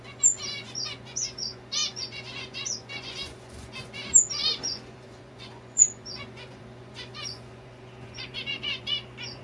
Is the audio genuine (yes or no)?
no